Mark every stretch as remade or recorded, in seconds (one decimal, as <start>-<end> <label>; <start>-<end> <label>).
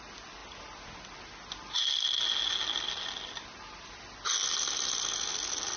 0.0-5.8 recorded